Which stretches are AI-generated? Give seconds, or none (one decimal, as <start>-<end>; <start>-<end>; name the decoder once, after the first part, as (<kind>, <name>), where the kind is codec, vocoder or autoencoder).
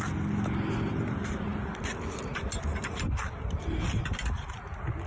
none